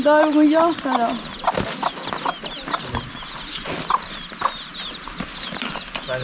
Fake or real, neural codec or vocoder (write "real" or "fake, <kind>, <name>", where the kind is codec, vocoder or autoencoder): real